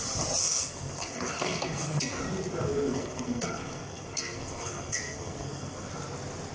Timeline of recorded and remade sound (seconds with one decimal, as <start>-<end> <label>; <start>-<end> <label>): 0.0-0.4 recorded; 0.4-2.2 remade; 2.2-2.7 recorded; 2.7-5.9 remade; 5.9-6.5 recorded